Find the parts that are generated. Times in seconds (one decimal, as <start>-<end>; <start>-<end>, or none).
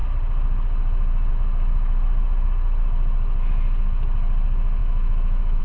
4.8-5.6